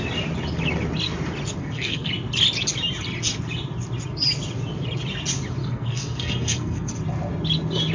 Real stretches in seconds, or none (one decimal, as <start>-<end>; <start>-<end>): 0.0-1.6; 2.1-5.6; 6.9-7.9